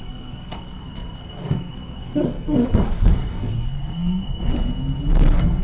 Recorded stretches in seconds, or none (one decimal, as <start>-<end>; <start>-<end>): 4.5-5.1